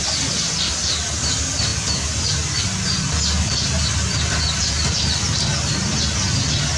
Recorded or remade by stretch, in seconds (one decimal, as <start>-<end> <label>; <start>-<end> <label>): 0.0-6.8 recorded